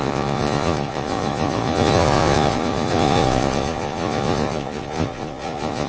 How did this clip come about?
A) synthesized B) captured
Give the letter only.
A